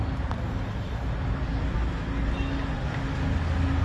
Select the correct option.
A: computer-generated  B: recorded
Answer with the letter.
B